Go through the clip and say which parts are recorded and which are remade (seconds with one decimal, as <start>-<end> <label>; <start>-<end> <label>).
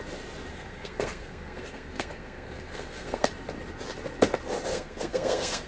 0.0-0.5 recorded; 0.5-3.3 remade; 3.3-4.7 recorded; 4.7-5.7 remade